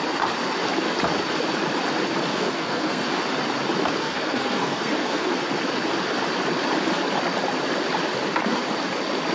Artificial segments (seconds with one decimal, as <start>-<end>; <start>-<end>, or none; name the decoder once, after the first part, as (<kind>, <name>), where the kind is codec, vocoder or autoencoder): 2.3-3.1 (codec, SNAC); 4.0-5.4